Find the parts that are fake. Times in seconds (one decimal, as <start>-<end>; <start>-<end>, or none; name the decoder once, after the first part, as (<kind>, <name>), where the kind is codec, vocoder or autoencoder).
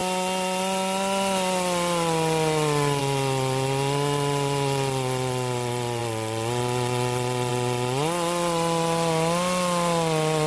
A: none